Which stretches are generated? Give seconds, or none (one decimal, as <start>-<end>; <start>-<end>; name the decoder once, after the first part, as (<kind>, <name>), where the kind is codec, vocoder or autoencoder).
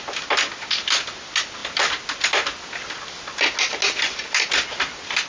none